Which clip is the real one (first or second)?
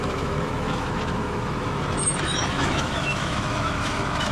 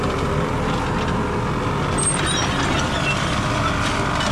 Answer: second